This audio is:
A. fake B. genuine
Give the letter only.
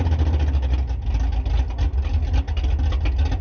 B